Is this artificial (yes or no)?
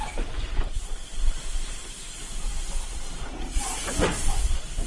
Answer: yes